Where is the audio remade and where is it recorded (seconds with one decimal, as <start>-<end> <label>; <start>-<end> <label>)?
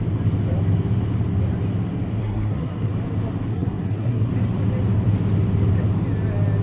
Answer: 0.0-2.2 recorded; 2.2-2.9 remade; 2.9-3.5 recorded; 3.5-4.3 remade; 4.3-6.6 recorded